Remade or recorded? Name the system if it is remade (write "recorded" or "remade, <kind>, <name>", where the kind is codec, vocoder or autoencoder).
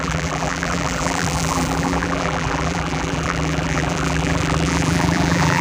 remade, vocoder, BigVGAN v2